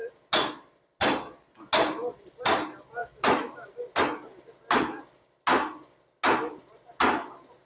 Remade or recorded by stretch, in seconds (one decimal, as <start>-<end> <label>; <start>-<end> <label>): 0.0-3.0 recorded; 3.0-3.7 remade; 3.7-7.7 recorded